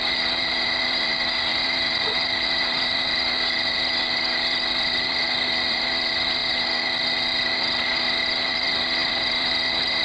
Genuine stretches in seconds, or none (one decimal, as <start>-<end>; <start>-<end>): 6.4-8.3